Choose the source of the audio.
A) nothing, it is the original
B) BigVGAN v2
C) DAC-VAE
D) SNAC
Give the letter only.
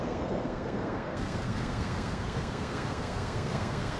D